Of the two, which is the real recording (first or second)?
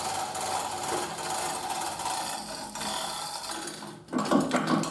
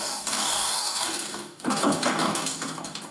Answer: first